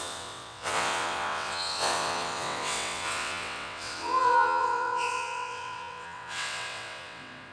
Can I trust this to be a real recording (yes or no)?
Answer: no